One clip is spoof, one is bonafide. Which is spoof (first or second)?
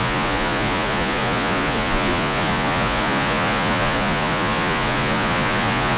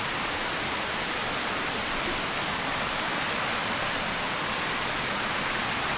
first